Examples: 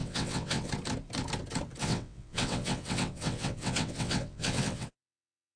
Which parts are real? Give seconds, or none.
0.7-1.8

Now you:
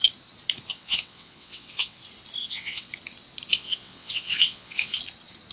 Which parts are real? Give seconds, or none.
0.0-0.7; 2.0-2.4; 2.9-3.5; 5.0-5.5

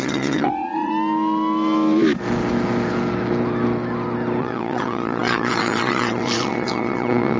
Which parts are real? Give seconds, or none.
0.9-4.4

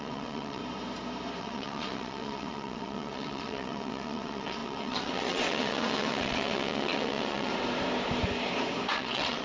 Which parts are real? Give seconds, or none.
0.6-1.4; 7.5-8.9

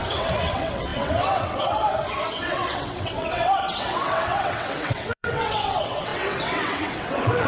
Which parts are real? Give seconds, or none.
none

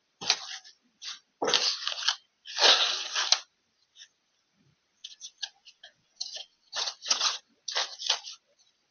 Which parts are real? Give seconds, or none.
0.0-5.0; 7.4-8.9

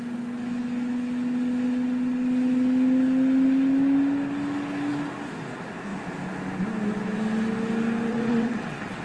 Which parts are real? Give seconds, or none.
0.0-8.1